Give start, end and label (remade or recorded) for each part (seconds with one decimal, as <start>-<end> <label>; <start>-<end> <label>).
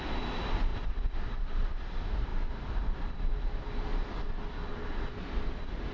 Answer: 0.0-5.9 recorded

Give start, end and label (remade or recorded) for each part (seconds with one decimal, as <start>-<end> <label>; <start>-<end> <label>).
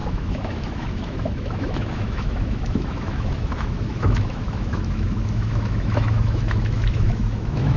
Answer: 0.0-7.8 remade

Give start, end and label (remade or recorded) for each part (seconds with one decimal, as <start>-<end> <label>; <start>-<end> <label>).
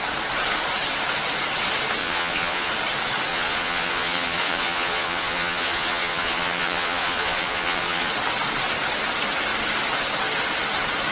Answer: 0.0-2.0 recorded; 2.0-2.7 remade; 2.7-3.3 recorded; 3.3-8.1 remade; 8.1-11.1 recorded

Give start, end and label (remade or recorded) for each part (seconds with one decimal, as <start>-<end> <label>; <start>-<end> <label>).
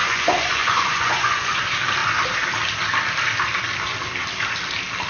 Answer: 0.0-1.6 remade; 1.6-5.1 recorded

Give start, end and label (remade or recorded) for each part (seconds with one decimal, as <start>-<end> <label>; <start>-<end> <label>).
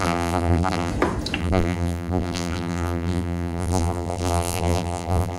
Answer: 0.0-0.9 remade; 0.9-1.4 recorded; 1.4-5.4 remade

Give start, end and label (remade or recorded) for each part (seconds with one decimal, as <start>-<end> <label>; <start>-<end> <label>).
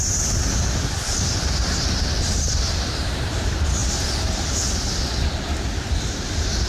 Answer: 0.0-3.8 remade; 3.8-4.5 recorded; 4.5-6.7 remade